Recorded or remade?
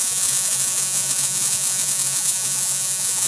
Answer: remade